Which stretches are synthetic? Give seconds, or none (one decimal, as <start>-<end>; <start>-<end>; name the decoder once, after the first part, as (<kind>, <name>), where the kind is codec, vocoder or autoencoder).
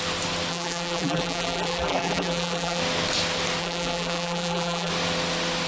0.5-2.8 (vocoder, BigVGAN v2); 3.6-4.9